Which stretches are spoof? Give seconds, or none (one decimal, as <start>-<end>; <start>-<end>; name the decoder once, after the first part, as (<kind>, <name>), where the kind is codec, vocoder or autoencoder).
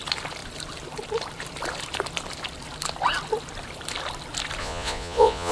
4.6-5.5 (vocoder, Vocos)